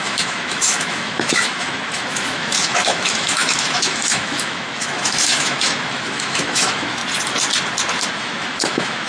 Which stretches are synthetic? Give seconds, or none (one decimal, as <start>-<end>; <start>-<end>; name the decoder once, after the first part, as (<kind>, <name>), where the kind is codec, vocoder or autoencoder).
0.0-7.0 (autoencoder, DAC-VAE); 8.1-9.1